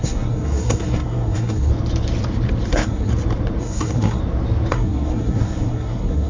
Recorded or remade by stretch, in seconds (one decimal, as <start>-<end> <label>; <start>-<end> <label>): 0.0-1.7 remade; 1.7-2.7 recorded; 2.7-3.1 remade; 3.1-3.6 recorded; 3.6-4.2 remade; 4.2-4.7 recorded; 4.7-6.3 remade